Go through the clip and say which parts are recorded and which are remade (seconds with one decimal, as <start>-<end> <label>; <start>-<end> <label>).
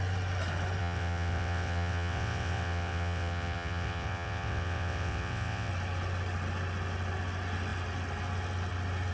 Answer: 0.0-0.8 recorded; 0.8-5.7 remade; 5.7-9.1 recorded